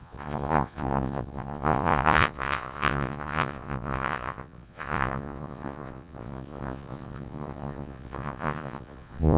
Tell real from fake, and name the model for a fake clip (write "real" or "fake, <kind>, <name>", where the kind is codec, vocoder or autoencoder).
fake, vocoder, Vocos